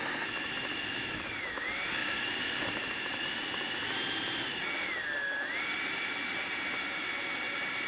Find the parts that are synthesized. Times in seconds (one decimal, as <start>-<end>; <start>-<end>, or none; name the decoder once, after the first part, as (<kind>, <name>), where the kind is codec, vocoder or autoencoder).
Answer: 2.0-3.2 (vocoder, BigVGAN v2)